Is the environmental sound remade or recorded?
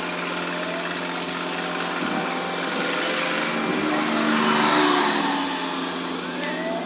recorded